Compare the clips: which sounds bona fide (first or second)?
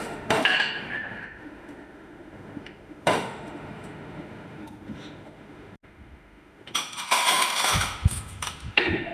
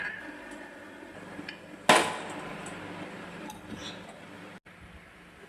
second